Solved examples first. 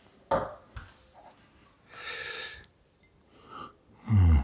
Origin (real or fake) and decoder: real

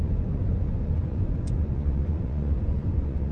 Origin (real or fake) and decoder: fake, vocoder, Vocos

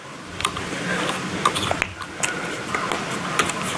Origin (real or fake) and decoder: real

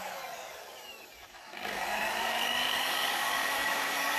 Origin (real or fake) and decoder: fake, codec, DAC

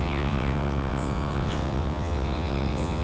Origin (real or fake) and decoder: fake, vocoder, WaveNeXt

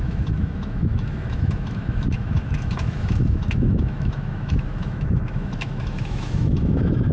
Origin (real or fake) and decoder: fake, autoencoder, DAC-VAE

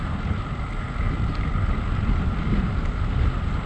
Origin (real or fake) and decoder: real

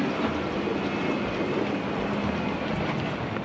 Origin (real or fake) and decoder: real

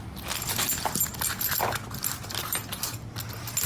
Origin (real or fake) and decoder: real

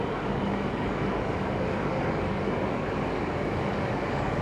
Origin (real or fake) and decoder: fake, codec, DAC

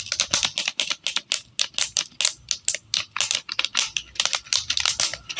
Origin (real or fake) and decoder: real